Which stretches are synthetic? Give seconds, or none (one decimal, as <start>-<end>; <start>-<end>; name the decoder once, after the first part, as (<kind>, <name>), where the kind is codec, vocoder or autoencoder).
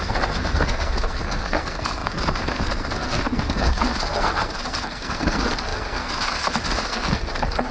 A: 0.0-7.7 (codec, SNAC)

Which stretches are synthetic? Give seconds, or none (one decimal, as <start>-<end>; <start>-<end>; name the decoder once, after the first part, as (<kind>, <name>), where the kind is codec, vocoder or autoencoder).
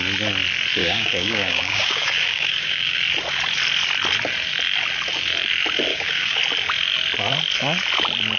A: 0.8-3.0 (codec, DAC); 5.9-6.4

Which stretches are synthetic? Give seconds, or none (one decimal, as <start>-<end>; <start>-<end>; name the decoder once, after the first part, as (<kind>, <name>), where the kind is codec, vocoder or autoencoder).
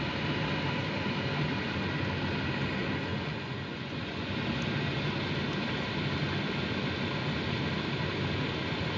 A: 3.1-4.3 (vocoder, Vocos)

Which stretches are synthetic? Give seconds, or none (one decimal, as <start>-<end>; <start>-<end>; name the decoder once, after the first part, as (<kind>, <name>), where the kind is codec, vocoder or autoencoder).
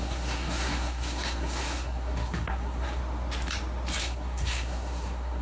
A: 0.0-3.0 (codec, SNAC); 4.0-5.4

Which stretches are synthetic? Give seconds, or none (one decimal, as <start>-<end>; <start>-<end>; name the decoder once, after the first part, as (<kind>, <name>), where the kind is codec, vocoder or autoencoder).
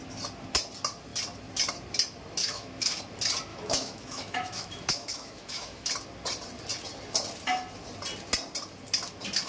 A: 2.4-3.0 (autoencoder, DAC-VAE); 3.5-5.9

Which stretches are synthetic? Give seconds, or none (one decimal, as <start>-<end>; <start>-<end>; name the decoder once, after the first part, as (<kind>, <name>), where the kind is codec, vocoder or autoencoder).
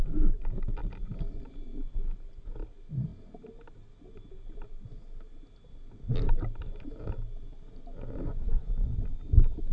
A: none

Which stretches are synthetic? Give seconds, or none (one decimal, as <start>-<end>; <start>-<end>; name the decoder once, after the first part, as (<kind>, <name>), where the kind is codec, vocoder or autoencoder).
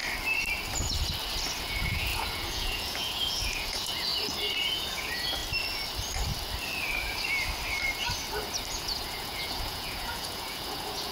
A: 1.6-4.1 (vocoder, Vocos); 4.6-5.4; 8.7-11.1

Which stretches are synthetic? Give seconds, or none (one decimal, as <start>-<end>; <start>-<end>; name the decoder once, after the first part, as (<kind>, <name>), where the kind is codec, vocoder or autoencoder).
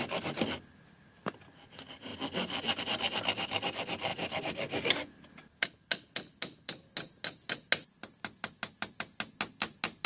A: none